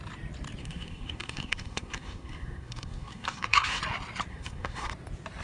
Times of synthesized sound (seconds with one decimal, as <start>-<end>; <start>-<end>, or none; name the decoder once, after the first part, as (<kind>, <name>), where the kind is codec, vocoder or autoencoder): 0.6-3.8 (codec, SNAC); 4.3-4.9